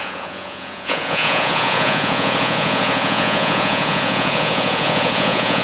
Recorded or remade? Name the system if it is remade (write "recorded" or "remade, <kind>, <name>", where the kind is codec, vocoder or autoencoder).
remade, vocoder, Vocos